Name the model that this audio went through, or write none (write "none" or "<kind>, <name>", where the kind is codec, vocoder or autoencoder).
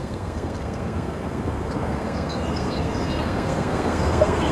codec, SNAC